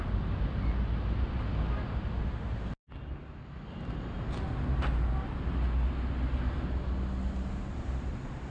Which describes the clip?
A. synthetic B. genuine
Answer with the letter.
B